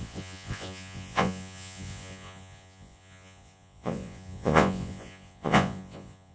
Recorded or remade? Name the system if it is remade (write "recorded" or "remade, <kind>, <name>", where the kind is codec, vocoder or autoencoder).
remade, vocoder, Vocos